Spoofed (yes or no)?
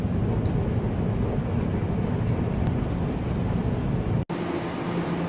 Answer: no